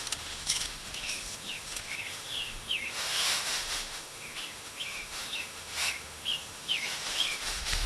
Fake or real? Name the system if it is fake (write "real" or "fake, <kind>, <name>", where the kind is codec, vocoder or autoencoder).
fake, autoencoder, DAC-VAE